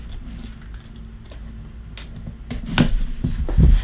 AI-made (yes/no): no